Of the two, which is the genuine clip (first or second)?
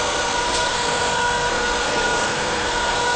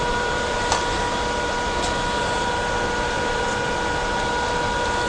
second